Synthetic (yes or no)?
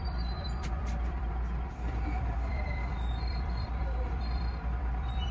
yes